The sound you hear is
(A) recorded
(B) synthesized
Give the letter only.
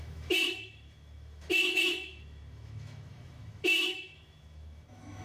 B